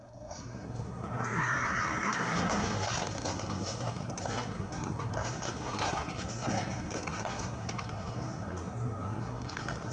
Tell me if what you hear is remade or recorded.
remade